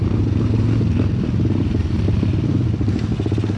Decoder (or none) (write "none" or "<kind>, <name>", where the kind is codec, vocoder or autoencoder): none